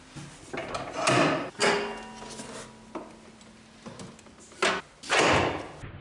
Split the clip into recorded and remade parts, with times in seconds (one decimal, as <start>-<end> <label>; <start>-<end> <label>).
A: 0.0-6.0 recorded